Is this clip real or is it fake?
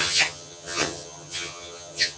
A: fake